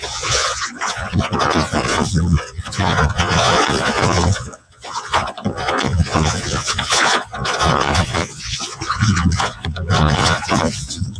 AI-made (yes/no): yes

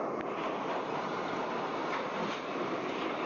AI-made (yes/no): no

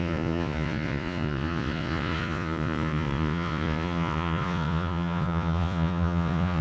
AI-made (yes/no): yes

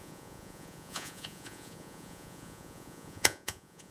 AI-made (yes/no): yes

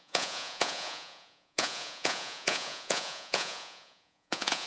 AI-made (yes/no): yes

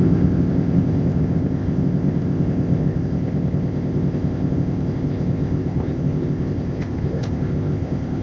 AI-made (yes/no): yes